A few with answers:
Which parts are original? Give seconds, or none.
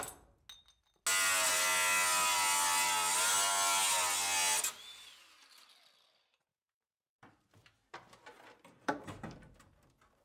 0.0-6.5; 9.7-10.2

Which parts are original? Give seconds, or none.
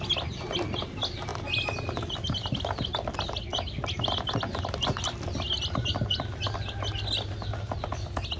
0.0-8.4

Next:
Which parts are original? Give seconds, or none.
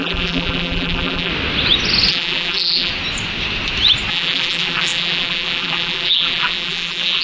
1.3-2.1; 2.9-4.1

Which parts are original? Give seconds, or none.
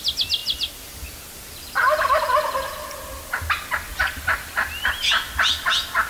0.0-0.4; 1.5-6.1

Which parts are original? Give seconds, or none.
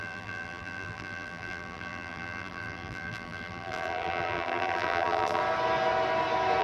5.4-6.6